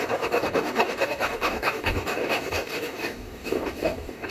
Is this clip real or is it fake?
fake